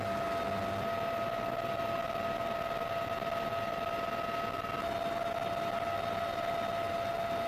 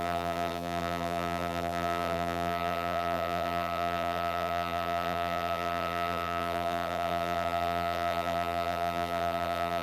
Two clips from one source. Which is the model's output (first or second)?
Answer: second